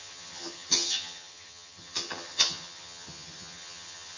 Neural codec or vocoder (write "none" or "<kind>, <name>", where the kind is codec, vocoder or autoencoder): vocoder, HiFi-GAN